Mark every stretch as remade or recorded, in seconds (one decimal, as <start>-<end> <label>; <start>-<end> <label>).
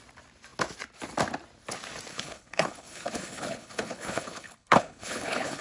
0.0-2.1 recorded; 2.1-5.6 remade